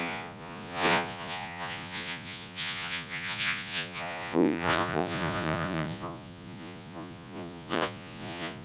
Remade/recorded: remade